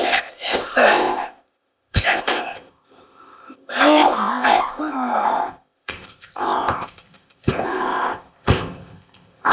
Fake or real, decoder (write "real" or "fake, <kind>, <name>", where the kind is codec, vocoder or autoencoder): fake, codec, ZipCodec